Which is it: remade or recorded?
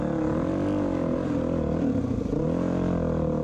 recorded